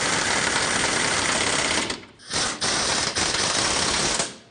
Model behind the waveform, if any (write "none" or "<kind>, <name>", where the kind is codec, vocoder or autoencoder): none